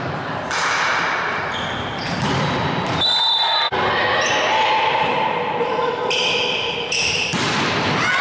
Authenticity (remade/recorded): recorded